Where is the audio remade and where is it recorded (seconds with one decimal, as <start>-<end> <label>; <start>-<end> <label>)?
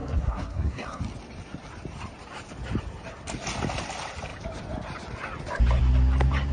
0.0-1.0 remade; 1.0-6.5 recorded